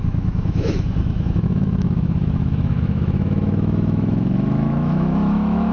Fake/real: fake